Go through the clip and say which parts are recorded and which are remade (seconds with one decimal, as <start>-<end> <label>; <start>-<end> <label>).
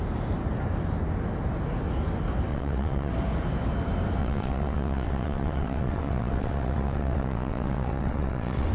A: 0.0-2.5 recorded; 2.5-3.1 remade; 3.1-4.2 recorded; 4.2-8.7 remade